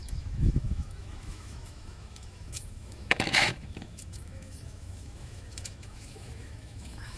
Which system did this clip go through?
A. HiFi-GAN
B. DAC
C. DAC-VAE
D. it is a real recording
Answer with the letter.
C